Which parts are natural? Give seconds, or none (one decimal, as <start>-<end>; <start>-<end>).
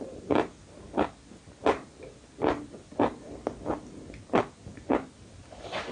0.0-5.9